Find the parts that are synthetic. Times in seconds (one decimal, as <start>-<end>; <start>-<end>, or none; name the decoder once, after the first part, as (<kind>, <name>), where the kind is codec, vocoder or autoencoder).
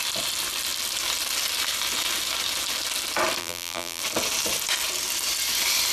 3.4-4.0 (vocoder, BigVGAN v2)